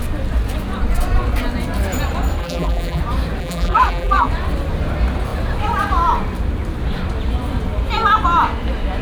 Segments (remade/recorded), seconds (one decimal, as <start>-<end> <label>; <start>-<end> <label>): 0.0-2.4 recorded; 2.4-3.0 remade; 3.0-3.4 recorded; 3.4-4.3 remade; 4.3-9.0 recorded